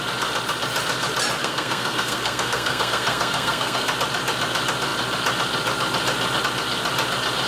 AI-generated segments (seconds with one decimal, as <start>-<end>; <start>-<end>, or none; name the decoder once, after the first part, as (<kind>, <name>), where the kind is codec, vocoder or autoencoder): 1.4-3.9 (codec, SNAC)